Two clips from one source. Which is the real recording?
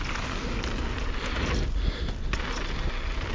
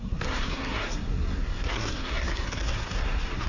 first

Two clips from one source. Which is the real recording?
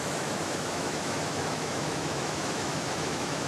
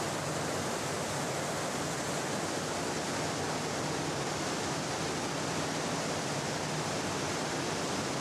second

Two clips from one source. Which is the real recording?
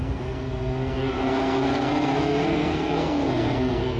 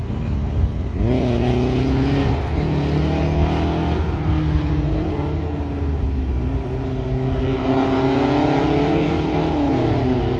second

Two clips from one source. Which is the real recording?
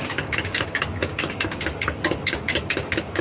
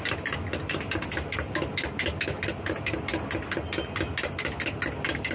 second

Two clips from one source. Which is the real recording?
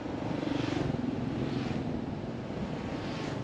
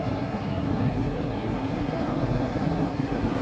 first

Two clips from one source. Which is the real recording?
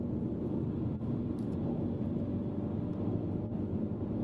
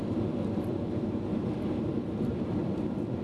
first